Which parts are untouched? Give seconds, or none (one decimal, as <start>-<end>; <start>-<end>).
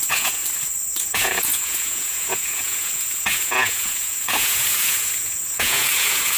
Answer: 0.4-0.9